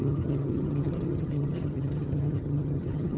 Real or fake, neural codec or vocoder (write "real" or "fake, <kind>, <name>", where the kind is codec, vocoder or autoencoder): fake, vocoder, HiFi-GAN